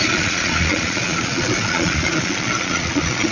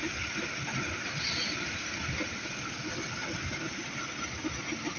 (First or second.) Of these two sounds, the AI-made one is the first